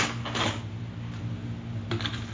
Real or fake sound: real